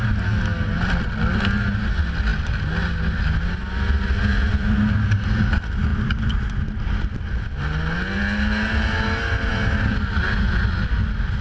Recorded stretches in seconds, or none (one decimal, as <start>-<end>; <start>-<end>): 0.0-11.4